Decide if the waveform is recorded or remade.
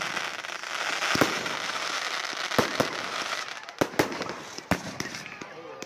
recorded